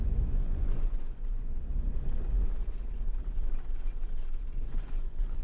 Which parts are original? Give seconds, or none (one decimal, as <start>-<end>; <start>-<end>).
1.5-4.4